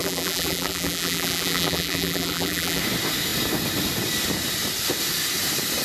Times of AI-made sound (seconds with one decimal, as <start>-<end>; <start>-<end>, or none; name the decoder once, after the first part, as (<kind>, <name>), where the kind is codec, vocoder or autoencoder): 0.0-2.8 (vocoder, BigVGAN v2)